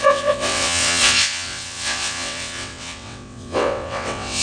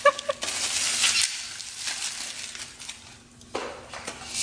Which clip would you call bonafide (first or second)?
second